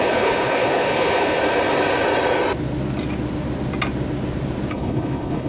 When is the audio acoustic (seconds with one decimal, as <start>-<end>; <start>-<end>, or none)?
1.4-4.7